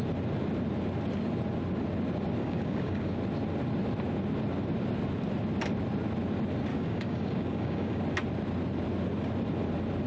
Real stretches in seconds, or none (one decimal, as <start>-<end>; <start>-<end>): 0.0-2.4; 3.0-6.7; 8.0-10.1